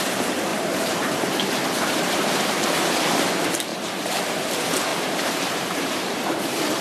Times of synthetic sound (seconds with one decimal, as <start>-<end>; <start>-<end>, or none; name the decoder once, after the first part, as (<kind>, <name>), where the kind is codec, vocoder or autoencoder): 0.5-1.7 (vocoder, BigVGAN v2); 4.9-6.3